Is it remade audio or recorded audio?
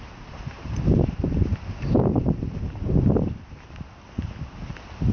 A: recorded